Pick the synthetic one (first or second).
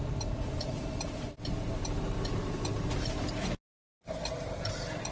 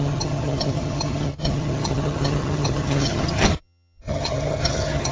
second